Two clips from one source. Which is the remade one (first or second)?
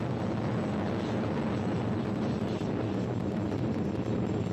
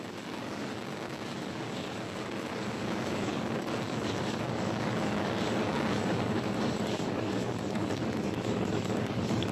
second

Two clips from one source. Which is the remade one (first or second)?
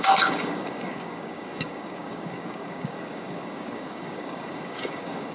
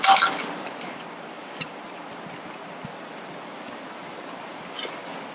first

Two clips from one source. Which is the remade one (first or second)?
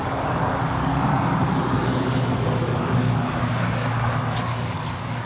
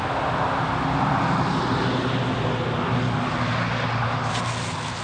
first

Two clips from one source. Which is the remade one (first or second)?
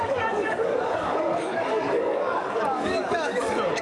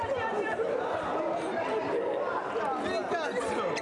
first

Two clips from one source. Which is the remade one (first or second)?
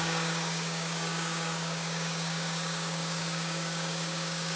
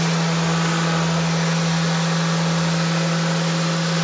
first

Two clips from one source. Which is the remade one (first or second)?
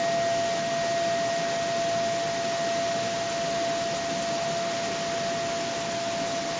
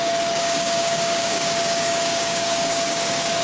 second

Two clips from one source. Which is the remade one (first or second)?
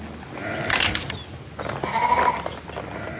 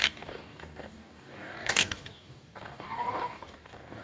second